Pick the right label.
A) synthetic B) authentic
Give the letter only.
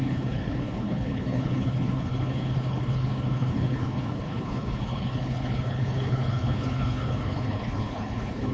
A